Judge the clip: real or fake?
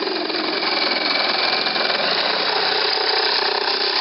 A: real